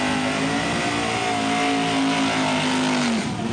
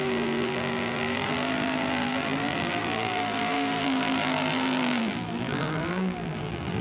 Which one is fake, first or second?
second